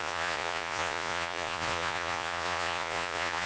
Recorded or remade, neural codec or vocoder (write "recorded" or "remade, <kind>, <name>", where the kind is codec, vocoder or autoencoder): remade, vocoder, Vocos